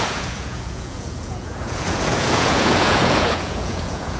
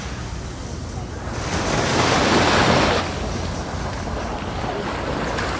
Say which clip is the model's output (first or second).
first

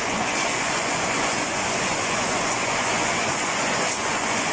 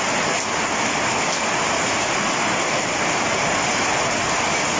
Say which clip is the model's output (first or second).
first